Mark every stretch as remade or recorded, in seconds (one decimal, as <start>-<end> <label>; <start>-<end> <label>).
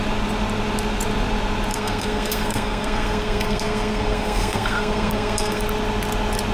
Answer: 0.0-1.7 recorded; 1.7-5.6 remade; 5.6-6.5 recorded